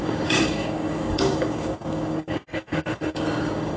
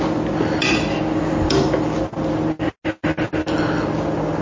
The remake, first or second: first